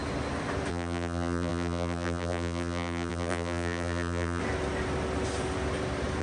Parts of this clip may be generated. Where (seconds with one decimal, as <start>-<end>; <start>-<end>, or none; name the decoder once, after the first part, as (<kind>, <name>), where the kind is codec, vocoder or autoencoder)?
0.7-4.4 (vocoder, BigVGAN v2)